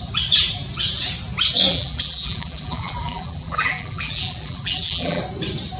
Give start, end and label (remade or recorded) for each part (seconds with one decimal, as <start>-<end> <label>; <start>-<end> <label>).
0.0-1.7 recorded; 1.7-5.2 remade; 5.2-5.8 recorded